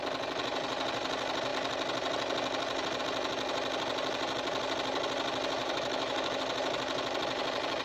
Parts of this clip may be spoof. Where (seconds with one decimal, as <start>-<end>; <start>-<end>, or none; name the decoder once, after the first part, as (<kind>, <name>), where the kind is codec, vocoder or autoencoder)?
5.6-6.4 (autoencoder, DAC-VAE)